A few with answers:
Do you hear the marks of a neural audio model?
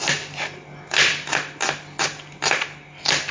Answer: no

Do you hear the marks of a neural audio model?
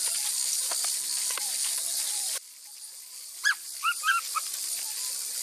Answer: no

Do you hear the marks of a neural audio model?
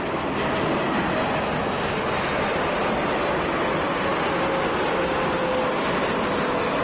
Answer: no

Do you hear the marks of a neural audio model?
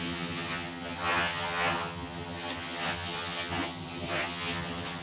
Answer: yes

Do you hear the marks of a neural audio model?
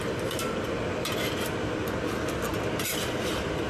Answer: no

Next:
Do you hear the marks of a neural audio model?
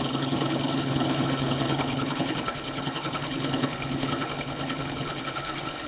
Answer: yes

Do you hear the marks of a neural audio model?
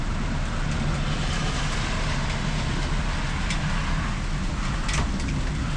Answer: no